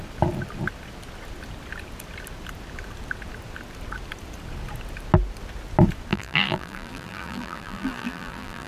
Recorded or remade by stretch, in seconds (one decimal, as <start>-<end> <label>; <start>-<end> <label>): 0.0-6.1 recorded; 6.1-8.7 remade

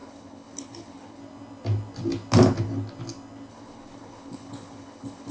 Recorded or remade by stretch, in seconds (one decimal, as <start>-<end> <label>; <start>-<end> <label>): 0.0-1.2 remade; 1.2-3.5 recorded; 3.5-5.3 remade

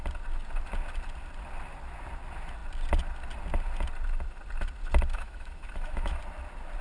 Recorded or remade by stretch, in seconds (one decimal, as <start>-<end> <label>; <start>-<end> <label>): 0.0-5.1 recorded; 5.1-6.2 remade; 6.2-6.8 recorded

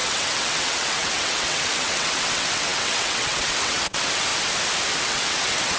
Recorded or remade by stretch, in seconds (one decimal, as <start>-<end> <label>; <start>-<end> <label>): 0.0-4.3 remade; 4.3-5.0 recorded; 5.0-5.8 remade

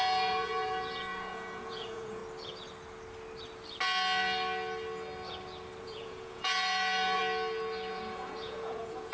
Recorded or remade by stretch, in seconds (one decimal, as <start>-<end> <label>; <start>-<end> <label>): 0.0-2.2 remade; 2.2-5.8 recorded; 5.8-7.2 remade; 7.2-7.9 recorded; 7.9-9.1 remade